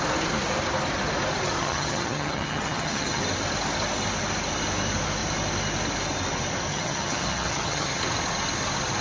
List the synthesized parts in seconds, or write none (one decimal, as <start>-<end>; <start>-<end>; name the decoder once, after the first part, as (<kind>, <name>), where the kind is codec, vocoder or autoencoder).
1.6-3.2 (vocoder, HiFi-GAN); 6.7-8.0